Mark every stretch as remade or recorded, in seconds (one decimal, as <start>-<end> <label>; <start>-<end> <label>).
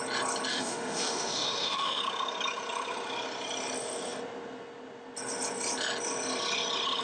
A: 0.0-0.5 recorded; 0.5-2.0 remade; 2.0-7.0 recorded